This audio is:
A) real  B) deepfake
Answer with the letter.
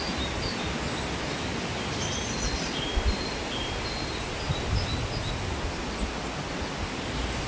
A